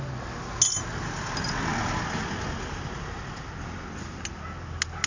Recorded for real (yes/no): yes